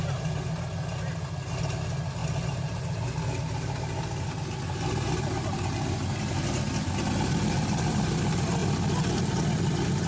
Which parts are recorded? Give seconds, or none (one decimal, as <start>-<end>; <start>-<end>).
0.0-2.2; 2.8-10.1